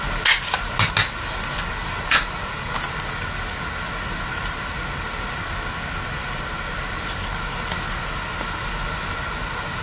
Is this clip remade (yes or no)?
no